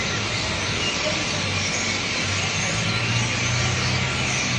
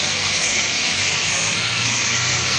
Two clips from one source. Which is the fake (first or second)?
second